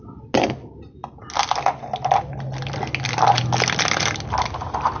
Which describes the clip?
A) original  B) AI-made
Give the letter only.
A